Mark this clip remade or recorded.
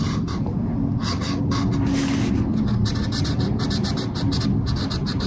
recorded